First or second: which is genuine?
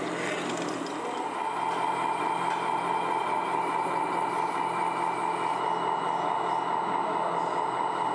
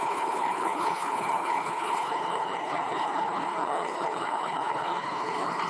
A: first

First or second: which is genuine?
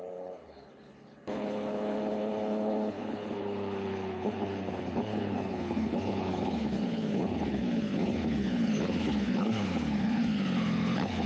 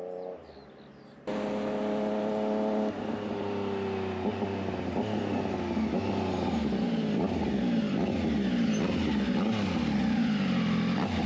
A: second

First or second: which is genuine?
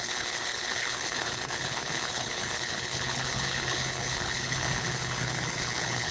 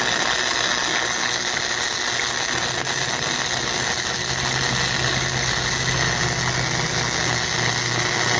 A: second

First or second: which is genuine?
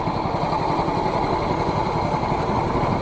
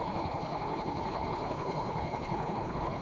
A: first